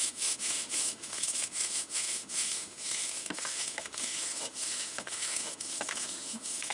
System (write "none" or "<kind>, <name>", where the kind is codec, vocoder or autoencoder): autoencoder, DAC-VAE